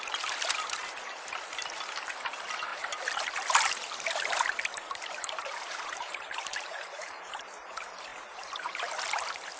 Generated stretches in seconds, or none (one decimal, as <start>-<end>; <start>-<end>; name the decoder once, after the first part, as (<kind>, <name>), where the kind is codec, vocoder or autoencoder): 2.7-7.4 (vocoder, BigVGAN v2); 8.1-8.9